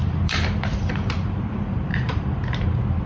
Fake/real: fake